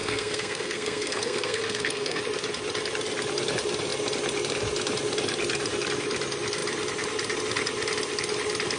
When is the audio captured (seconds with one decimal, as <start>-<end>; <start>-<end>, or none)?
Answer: 2.2-8.8